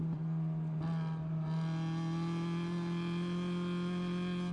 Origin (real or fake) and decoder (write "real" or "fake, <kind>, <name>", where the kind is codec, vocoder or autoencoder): real